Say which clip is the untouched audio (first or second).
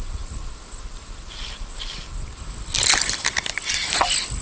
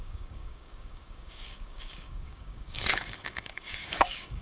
first